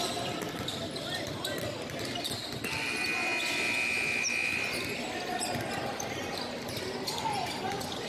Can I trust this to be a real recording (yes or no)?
yes